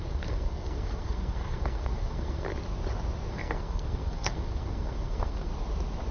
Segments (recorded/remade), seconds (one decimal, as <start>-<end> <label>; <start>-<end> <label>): 0.0-2.5 remade; 2.5-3.3 recorded; 3.3-5.5 remade; 5.5-6.1 recorded